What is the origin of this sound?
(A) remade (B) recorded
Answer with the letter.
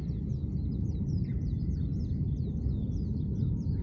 B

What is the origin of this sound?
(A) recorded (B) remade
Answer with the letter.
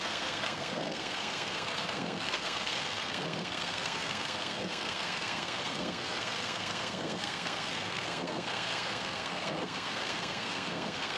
B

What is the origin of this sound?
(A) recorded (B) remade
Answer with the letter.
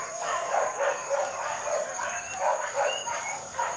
B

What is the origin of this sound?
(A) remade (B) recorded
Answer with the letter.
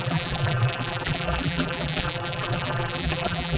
A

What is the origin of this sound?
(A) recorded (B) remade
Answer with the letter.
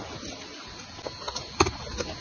A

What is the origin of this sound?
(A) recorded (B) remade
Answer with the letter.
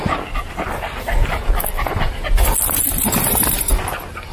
A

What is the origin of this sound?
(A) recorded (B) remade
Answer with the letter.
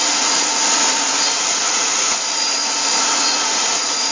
B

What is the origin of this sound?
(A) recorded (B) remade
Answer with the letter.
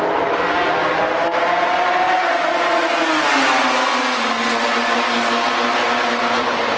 A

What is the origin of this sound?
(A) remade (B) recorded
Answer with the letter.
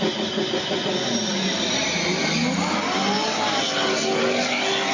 B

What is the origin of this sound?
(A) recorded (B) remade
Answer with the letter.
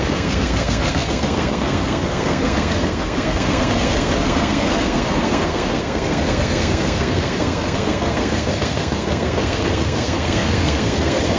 B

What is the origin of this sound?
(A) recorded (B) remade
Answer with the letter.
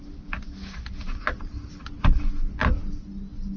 A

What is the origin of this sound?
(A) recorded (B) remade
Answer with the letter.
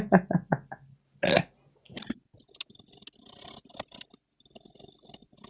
A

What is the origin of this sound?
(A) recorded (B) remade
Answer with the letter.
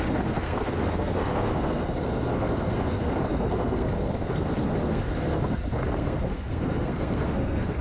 B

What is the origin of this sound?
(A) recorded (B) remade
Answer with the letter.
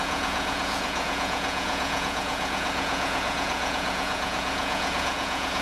B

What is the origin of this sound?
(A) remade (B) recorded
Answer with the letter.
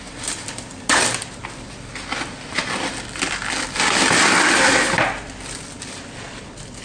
B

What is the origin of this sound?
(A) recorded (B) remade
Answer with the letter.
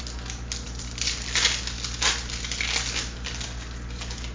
A